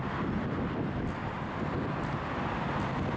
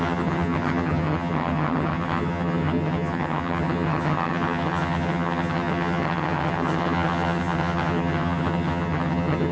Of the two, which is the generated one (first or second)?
second